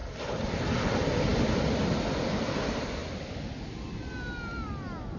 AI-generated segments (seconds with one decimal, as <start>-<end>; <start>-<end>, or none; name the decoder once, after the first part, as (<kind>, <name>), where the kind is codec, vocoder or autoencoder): 0.0-0.8 (vocoder, BigVGAN v2); 1.3-1.8; 3.0-3.6